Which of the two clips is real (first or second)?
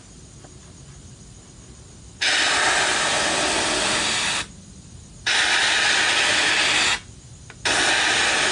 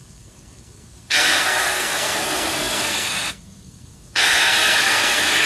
first